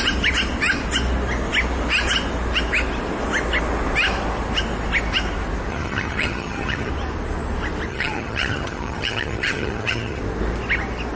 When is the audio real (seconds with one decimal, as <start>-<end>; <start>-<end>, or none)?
0.0-5.7; 6.9-7.9; 10.2-11.2